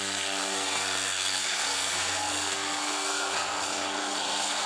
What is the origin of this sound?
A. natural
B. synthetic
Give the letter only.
B